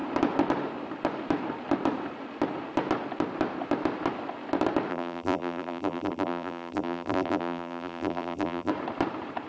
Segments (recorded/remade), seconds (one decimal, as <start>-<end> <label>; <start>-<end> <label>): 0.0-4.9 recorded; 4.9-8.7 remade; 8.7-9.5 recorded